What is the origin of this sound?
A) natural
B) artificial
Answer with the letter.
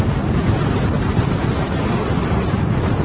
A